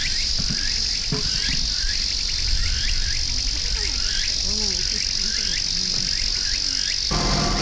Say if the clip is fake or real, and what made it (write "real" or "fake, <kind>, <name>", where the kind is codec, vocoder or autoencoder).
real